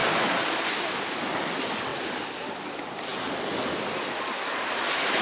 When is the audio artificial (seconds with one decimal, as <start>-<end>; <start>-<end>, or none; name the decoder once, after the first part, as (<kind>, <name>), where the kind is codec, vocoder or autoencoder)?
none